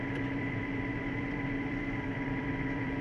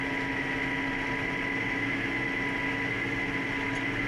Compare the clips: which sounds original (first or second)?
second